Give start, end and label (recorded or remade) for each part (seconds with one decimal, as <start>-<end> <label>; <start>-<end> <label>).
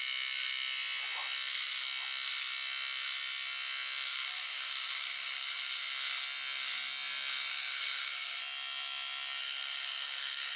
0.0-4.1 recorded; 4.1-5.9 remade; 5.9-7.5 recorded; 7.5-8.4 remade; 8.4-9.4 recorded; 9.4-10.6 remade